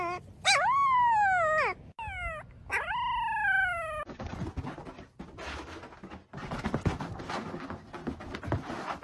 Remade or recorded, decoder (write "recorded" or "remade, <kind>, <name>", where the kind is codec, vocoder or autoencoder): recorded